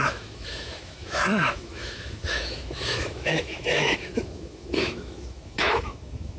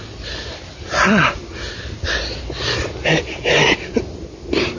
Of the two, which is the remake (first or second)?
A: first